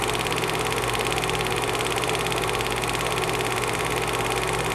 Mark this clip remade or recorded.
recorded